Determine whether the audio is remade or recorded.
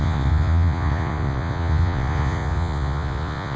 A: remade